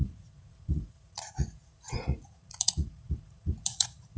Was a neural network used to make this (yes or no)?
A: yes